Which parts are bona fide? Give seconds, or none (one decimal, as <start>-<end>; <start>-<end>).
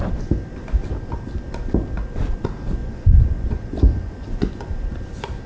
0.0-2.8; 4.5-5.5